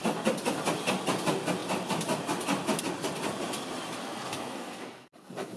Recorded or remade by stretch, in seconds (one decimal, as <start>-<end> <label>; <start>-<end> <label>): 0.0-4.0 recorded; 4.0-5.6 remade